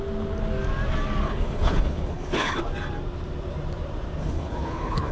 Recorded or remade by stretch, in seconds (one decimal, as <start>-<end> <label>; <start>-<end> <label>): 0.0-1.2 recorded; 1.2-2.6 remade; 2.6-4.2 recorded; 4.2-5.1 remade